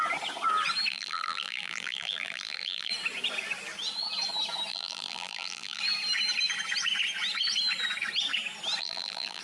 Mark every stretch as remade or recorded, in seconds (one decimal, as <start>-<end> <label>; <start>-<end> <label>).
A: 0.0-0.9 recorded; 0.9-2.9 remade; 2.9-4.7 recorded; 4.7-5.8 remade; 5.8-8.8 recorded; 8.8-9.4 remade

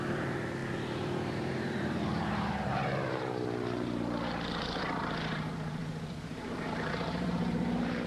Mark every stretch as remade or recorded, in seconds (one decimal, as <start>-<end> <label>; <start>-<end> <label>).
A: 0.0-8.1 remade

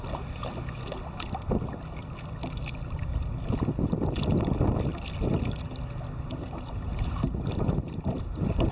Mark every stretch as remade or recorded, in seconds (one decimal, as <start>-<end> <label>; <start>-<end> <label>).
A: 0.0-6.4 recorded; 6.4-8.7 remade

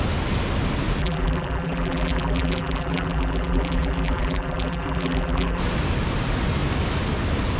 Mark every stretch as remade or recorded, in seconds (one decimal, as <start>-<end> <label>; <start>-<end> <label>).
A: 0.0-1.0 recorded; 1.0-5.6 remade; 5.6-7.6 recorded

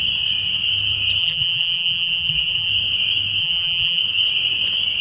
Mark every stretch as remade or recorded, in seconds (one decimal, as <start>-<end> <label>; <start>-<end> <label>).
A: 0.0-1.2 recorded; 1.2-2.7 remade; 2.7-3.4 recorded; 3.4-4.0 remade; 4.0-5.0 recorded

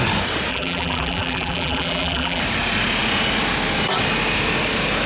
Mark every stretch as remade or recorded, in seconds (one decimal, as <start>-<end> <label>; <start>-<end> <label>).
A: 0.0-0.5 recorded; 0.5-2.4 remade; 2.4-5.1 recorded